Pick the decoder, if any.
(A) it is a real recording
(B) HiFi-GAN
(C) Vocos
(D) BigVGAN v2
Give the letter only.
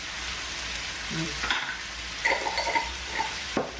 D